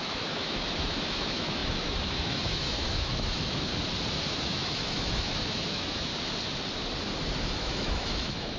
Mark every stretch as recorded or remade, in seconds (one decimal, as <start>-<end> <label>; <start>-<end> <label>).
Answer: 0.0-3.7 remade; 3.7-4.4 recorded; 4.4-6.1 remade; 6.1-7.4 recorded; 7.4-8.6 remade